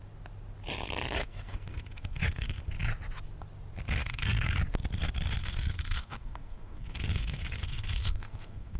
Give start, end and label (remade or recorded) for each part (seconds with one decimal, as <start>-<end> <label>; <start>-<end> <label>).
0.0-1.2 recorded; 1.2-2.6 remade; 2.6-4.0 recorded; 4.0-4.6 remade; 4.6-5.4 recorded; 5.4-8.8 remade